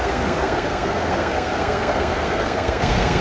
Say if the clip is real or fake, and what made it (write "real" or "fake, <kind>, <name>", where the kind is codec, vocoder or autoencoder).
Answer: fake, codec, SNAC